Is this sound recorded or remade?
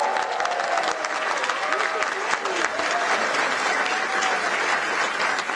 recorded